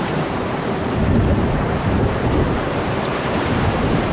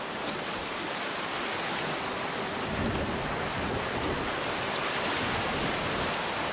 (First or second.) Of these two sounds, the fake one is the first